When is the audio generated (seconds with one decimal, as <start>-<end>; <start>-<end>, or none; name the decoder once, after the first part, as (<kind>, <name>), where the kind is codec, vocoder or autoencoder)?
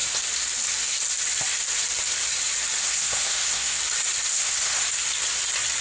2.8-3.8 (codec, SNAC); 4.3-4.8